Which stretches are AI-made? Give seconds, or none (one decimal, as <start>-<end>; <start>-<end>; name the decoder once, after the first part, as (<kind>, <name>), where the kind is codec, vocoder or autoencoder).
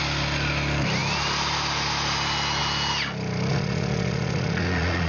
3.5-5.1 (vocoder, Vocos)